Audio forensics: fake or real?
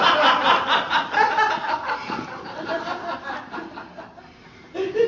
real